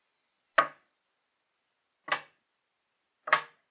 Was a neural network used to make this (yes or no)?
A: no